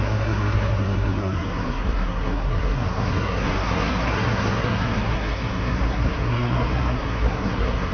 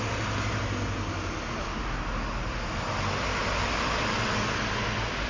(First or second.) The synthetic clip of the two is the first